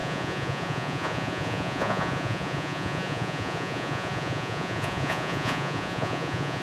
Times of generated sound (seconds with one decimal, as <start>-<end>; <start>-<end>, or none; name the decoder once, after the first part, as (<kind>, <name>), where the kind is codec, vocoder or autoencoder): 0.0-6.6 (vocoder, Vocos)

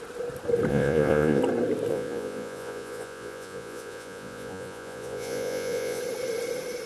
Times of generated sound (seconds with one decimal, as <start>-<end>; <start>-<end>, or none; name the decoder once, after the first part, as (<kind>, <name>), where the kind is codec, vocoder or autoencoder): 0.7-1.4 (vocoder, Vocos); 1.9-6.0